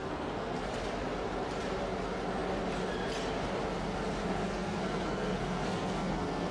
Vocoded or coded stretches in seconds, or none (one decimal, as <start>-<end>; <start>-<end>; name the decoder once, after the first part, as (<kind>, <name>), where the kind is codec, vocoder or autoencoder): 0.0-0.7 (codec, SNAC); 4.2-6.5